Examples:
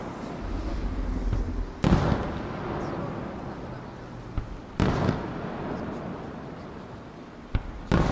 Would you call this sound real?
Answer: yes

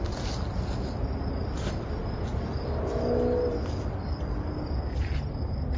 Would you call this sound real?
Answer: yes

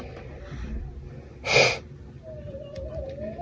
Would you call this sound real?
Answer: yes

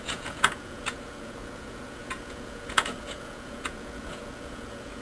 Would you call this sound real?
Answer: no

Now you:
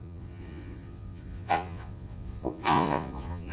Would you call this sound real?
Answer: no